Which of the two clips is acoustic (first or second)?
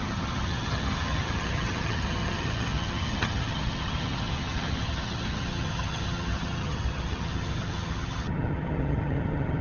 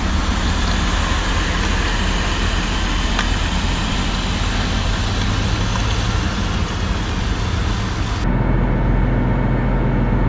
second